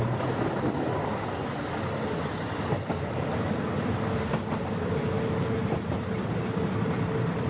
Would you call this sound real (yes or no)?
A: yes